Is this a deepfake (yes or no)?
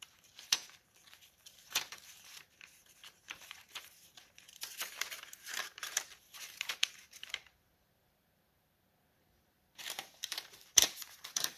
yes